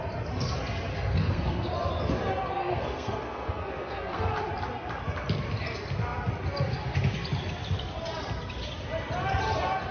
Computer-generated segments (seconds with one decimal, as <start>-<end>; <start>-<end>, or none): 0.9-1.7; 2.6-4.3